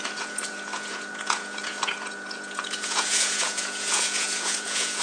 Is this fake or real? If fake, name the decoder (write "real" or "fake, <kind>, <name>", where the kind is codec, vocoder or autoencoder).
fake, vocoder, Vocos